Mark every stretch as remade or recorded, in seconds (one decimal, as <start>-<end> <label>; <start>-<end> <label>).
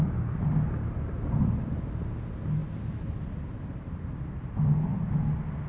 0.0-5.7 recorded